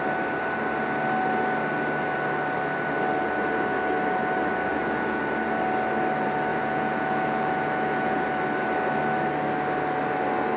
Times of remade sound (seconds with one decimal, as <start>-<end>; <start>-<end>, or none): 4.7-5.2; 6.5-8.3